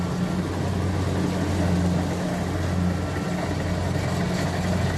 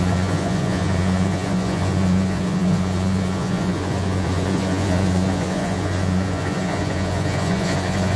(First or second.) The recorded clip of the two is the first